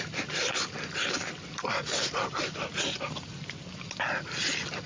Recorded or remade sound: recorded